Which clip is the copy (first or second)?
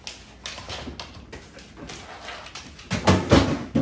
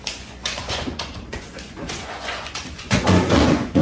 second